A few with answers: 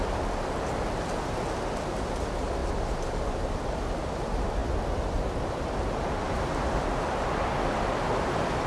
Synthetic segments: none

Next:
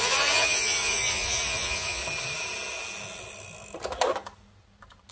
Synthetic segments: 0.0-2.0

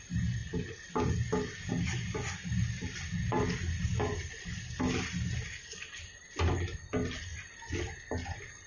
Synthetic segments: none